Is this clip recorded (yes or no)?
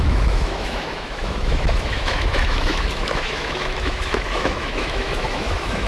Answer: no